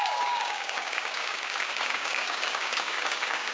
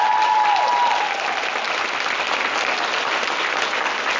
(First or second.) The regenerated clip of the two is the first